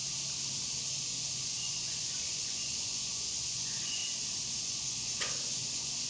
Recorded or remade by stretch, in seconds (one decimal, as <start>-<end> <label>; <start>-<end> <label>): 0.0-0.8 recorded; 0.8-4.0 remade; 4.0-4.6 recorded; 4.6-6.1 remade